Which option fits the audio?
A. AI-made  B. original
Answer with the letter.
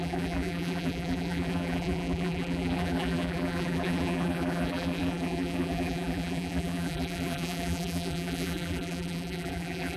A